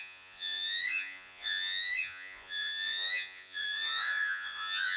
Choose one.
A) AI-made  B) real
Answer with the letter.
A